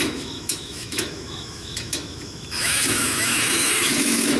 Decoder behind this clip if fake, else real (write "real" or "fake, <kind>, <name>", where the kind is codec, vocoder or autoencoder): fake, autoencoder, DAC-VAE